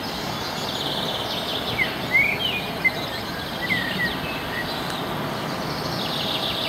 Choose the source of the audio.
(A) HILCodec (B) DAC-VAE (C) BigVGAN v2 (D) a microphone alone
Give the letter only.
D